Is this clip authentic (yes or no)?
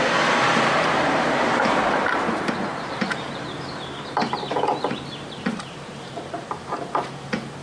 no